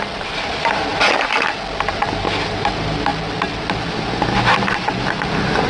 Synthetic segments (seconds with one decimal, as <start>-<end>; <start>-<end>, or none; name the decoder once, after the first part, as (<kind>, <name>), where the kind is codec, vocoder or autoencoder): none

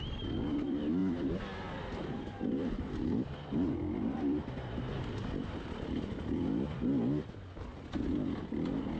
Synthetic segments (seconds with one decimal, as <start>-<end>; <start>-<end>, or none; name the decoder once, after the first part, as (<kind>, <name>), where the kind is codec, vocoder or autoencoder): 0.0-7.7 (vocoder, BigVGAN v2)

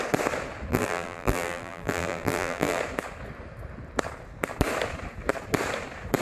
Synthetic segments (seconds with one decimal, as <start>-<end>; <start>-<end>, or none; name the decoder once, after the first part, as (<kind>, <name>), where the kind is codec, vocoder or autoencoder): 0.7-2.8 (vocoder, BigVGAN v2)

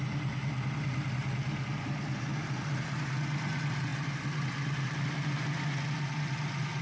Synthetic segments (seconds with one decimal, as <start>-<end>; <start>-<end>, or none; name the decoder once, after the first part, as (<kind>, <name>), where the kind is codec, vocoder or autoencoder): none